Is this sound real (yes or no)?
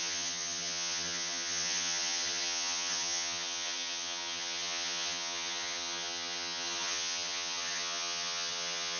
no